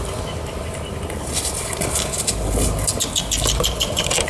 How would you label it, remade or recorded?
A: recorded